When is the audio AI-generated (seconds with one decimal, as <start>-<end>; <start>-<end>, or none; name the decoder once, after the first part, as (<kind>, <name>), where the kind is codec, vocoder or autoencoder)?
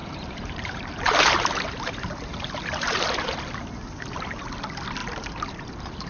0.0-3.4 (vocoder, BigVGAN v2); 5.0-6.1